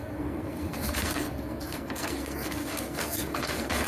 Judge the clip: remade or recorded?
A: remade